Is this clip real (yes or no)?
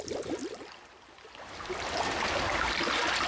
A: yes